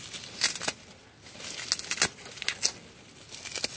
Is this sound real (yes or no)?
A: yes